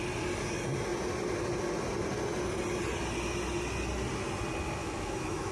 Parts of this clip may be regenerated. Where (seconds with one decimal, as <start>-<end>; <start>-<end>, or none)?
4.8-5.5